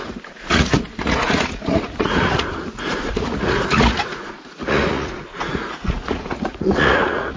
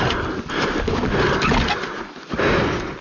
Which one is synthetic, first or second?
first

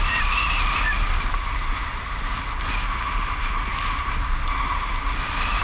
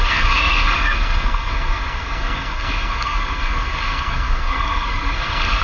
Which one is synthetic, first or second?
second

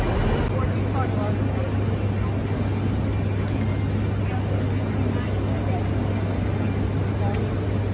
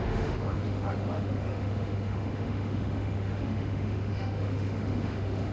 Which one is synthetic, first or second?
second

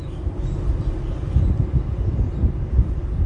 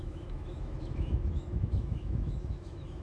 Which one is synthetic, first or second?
second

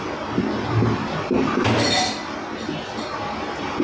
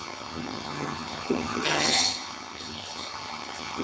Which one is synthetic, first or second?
second